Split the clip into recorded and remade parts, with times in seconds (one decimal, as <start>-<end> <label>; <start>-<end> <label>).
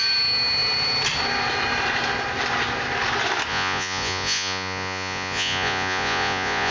0.0-3.5 recorded; 3.5-6.7 remade